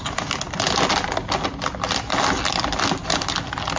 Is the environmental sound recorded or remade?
recorded